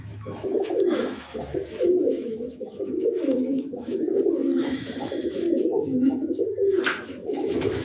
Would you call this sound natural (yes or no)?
no